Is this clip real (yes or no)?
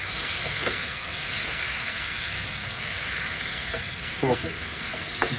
no